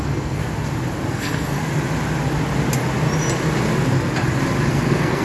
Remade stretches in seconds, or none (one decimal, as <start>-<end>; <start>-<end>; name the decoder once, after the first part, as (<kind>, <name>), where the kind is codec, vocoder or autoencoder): 0.0-0.4 (codec, SNAC); 1.1-1.6; 4.7-5.2

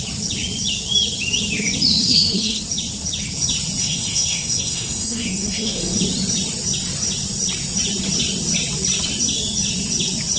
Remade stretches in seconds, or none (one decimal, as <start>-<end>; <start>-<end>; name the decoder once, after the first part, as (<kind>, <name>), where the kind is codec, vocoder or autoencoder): 2.0-2.6 (codec, SNAC); 3.8-6.0

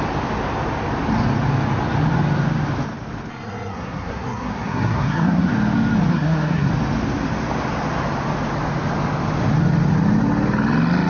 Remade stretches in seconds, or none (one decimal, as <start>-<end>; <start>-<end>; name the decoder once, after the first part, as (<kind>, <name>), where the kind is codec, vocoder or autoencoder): 3.3-5.5 (codec, SNAC); 6.1-6.7

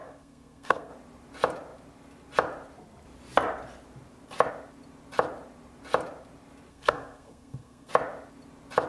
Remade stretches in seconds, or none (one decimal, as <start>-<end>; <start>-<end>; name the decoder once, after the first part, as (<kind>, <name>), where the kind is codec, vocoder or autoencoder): 0.0-0.9 (codec, SNAC); 6.7-7.9

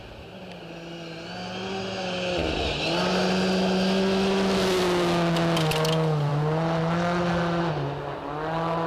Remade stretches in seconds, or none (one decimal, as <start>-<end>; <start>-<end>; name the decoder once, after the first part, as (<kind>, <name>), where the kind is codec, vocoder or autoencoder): none